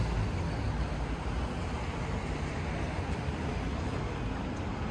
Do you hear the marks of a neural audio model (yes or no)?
no